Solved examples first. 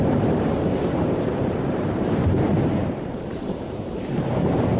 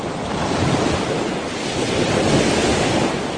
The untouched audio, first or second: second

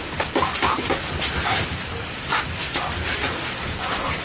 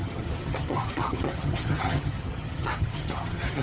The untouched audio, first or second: first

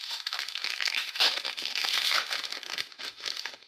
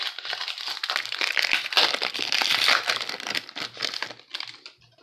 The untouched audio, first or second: second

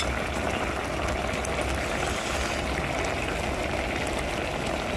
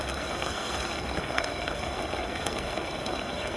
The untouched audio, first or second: first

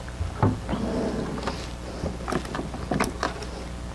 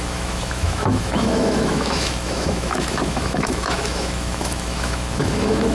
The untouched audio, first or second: first